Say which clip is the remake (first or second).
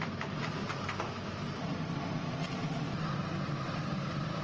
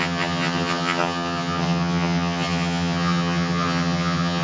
second